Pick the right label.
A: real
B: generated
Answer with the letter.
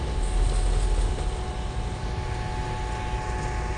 A